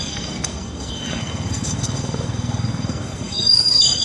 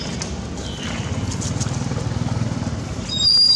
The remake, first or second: first